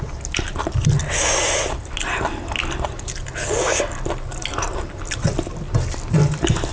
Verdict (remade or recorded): recorded